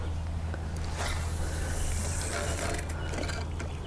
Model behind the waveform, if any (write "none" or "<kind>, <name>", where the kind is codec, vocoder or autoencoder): none